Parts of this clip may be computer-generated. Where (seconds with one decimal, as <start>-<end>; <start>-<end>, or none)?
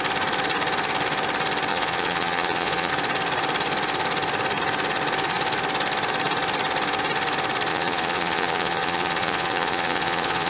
1.7-2.9; 7.7-10.5